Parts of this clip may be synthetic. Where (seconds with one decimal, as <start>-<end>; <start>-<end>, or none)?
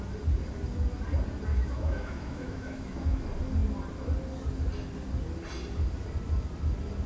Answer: 1.5-3.2